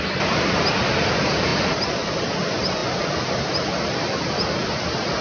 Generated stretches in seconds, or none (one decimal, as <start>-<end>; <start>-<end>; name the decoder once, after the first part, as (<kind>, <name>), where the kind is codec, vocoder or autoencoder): none